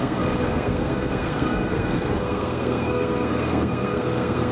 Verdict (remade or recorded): remade